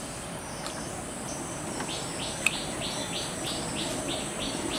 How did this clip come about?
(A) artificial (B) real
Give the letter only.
B